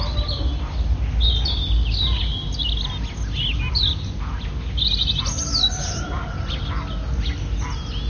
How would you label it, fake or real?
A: real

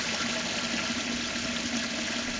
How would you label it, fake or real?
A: real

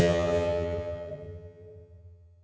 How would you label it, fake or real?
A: fake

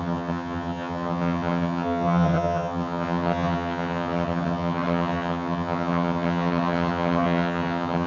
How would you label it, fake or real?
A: fake